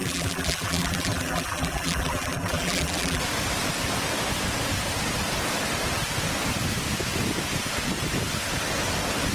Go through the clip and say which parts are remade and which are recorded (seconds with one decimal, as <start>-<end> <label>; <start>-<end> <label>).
0.0-3.2 remade; 3.2-9.3 recorded